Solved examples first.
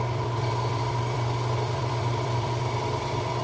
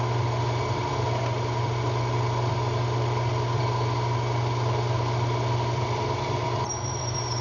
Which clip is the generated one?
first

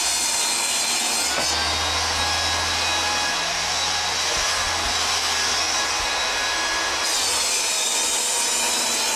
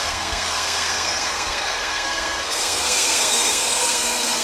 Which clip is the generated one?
second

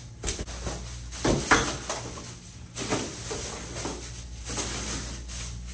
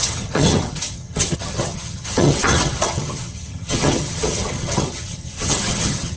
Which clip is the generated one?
second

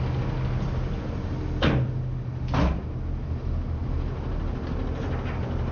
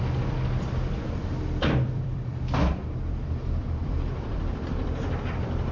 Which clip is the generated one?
second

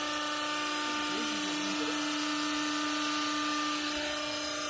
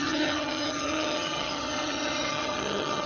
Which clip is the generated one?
second